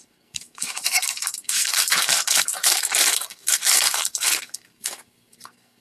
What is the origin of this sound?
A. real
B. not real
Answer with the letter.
B